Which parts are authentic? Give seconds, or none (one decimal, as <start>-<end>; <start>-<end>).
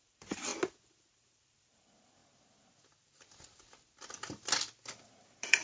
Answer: 0.5-1.1; 2.2-5.1